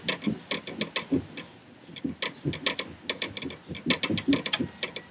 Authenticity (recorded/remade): recorded